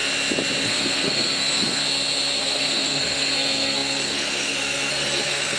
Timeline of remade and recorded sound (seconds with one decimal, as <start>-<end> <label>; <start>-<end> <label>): 0.0-0.6 recorded; 0.6-1.8 remade; 1.8-2.4 recorded; 2.4-5.6 remade

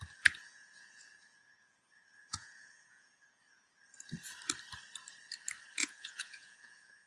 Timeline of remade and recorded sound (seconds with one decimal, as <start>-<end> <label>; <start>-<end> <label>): 0.0-0.4 recorded; 0.4-3.8 remade; 3.8-5.8 recorded; 5.8-7.1 remade

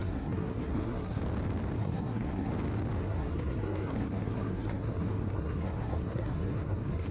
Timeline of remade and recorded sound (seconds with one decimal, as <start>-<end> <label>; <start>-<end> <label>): 0.0-1.2 remade; 1.2-1.8 recorded; 1.8-2.5 remade; 2.5-3.0 recorded; 3.0-7.1 remade

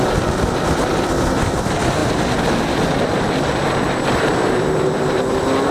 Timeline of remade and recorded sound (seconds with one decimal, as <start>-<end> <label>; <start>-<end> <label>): 0.0-2.0 remade; 2.0-3.0 recorded; 3.0-5.7 remade

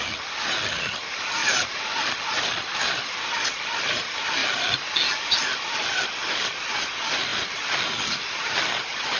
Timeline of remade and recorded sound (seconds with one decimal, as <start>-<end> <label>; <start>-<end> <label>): 0.0-9.2 recorded

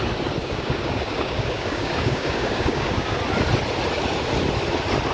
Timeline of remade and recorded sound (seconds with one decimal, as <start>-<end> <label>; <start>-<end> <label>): 0.0-0.4 recorded; 0.4-3.2 remade; 3.2-5.1 recorded

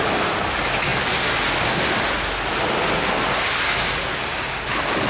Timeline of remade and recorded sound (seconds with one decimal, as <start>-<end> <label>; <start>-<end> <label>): 0.0-5.1 recorded

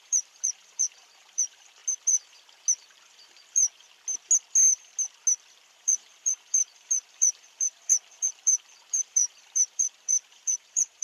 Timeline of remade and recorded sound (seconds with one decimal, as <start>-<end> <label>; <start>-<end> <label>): 0.0-1.8 remade; 1.8-2.7 recorded; 2.7-3.6 remade; 3.6-5.5 recorded; 5.5-11.0 remade